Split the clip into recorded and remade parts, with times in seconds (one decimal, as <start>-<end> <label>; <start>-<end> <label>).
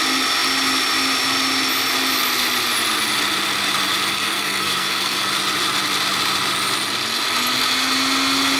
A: 0.0-4.1 recorded; 4.1-5.3 remade; 5.3-8.6 recorded